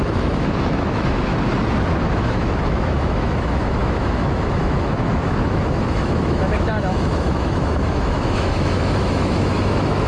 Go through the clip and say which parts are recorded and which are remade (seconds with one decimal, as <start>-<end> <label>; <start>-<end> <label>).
0.0-1.3 remade; 1.3-2.0 recorded; 2.0-10.1 remade

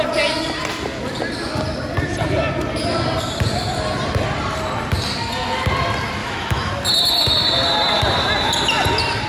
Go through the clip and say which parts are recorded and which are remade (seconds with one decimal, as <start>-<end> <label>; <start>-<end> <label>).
0.0-6.2 recorded; 6.2-6.7 remade; 6.7-9.3 recorded

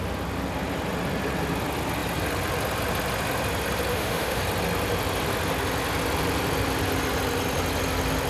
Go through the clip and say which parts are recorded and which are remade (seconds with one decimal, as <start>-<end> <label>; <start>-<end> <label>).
0.0-3.9 recorded; 3.9-4.4 remade; 4.4-8.3 recorded

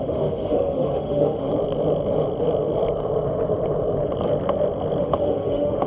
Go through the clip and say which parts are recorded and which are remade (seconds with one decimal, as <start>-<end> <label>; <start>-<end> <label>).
0.0-1.5 remade; 1.5-5.0 recorded; 5.0-5.9 remade

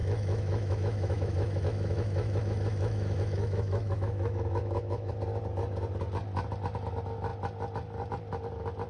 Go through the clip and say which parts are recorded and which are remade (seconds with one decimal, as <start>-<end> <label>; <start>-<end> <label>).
0.0-5.1 remade; 5.1-8.9 recorded

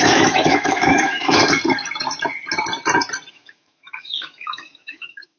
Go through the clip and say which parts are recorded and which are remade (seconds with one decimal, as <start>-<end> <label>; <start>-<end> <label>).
0.0-1.6 remade; 1.6-3.3 recorded; 3.3-5.4 remade

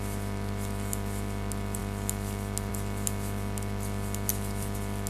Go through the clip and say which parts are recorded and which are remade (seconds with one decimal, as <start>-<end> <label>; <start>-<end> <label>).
0.0-5.1 recorded